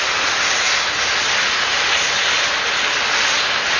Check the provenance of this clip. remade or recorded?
recorded